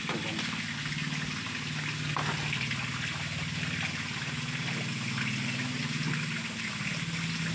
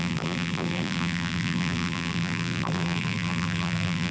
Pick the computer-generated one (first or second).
second